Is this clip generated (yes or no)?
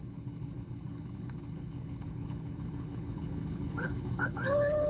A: yes